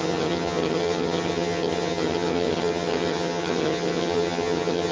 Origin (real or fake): fake